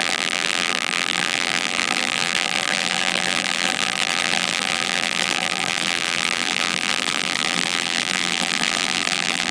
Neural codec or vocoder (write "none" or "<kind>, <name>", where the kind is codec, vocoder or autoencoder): vocoder, BigVGAN v2